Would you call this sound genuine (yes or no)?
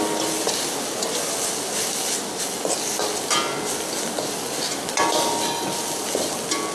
yes